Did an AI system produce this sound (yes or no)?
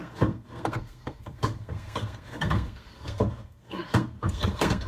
yes